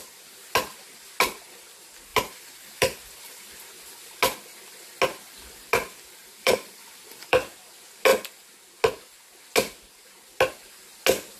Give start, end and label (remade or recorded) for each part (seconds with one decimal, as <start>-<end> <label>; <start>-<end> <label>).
0.0-2.1 recorded; 2.1-3.5 remade; 3.5-6.2 recorded; 6.2-7.5 remade; 7.5-11.4 recorded